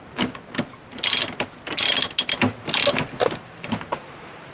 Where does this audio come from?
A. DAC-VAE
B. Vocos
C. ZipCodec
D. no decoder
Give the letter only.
D